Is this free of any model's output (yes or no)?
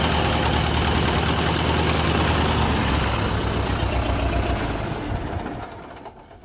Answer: yes